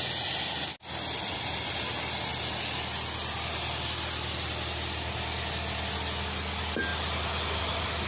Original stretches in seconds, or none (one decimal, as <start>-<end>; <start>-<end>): 0.0-8.1